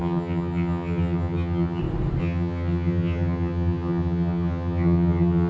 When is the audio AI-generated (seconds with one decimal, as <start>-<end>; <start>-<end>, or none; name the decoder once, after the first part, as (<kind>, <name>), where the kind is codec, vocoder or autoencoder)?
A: 0.0-1.8 (vocoder, HiFi-GAN); 2.2-5.5